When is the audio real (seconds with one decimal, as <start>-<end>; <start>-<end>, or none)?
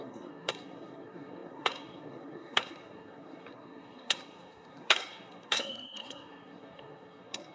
none